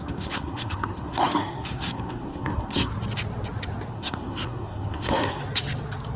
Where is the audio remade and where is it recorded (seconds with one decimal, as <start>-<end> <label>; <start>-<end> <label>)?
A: 0.0-2.9 remade; 2.9-3.9 recorded; 3.9-5.4 remade; 5.4-6.2 recorded